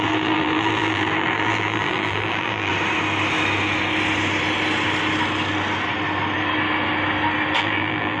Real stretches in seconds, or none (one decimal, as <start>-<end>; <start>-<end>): 2.7-7.6

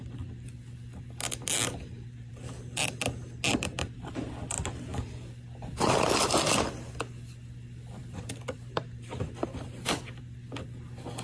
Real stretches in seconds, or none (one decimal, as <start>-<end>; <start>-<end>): 0.0-1.8; 2.3-3.5; 4.3-8.0; 10.2-11.2

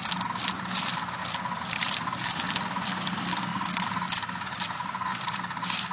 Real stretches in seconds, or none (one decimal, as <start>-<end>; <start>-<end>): 0.0-3.5

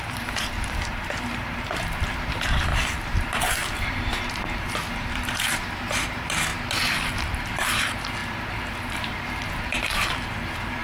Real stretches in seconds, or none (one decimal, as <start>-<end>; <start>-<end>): 6.5-7.1

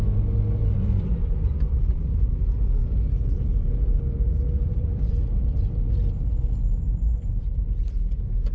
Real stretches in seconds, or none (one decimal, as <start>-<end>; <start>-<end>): 0.0-0.6; 2.3-2.8; 5.1-8.5

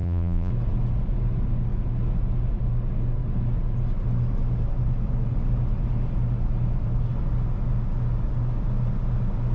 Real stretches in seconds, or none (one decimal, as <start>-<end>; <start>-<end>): 0.5-9.5

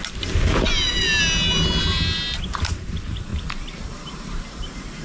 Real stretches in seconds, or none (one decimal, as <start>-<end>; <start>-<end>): 0.0-3.3; 4.3-5.0